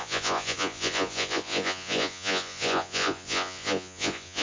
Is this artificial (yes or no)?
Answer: yes